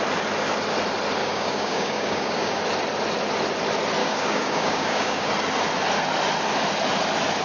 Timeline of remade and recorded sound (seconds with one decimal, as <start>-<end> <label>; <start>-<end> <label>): 0.0-1.2 recorded; 1.2-2.6 remade; 2.6-4.0 recorded; 4.0-5.3 remade; 5.3-7.4 recorded